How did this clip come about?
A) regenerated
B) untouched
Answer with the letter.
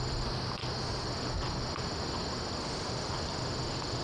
B